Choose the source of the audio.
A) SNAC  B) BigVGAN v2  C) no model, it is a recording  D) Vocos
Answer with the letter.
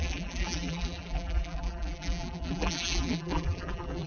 B